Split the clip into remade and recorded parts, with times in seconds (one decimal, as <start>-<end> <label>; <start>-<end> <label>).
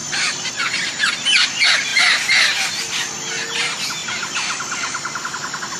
0.0-5.8 recorded